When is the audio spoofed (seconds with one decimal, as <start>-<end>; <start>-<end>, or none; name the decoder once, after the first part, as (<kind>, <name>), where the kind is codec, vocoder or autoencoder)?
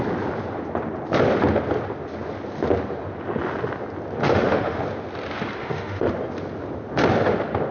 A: 4.2-4.8 (autoencoder, DAC-VAE); 5.6-6.1